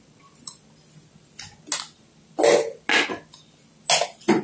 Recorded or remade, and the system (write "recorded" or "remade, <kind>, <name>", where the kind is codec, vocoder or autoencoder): recorded